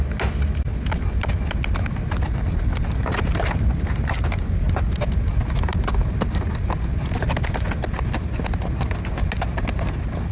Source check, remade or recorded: recorded